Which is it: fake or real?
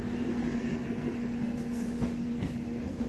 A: fake